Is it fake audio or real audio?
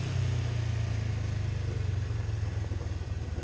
real